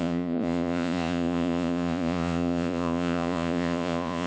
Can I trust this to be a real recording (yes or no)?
no